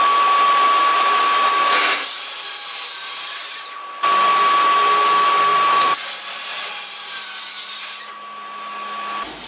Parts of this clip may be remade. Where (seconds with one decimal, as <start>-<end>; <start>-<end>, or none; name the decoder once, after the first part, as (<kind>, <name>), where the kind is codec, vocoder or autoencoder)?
1.8-3.7 (vocoder, BigVGAN v2); 5.5-8.1